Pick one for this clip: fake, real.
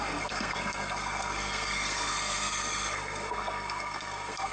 fake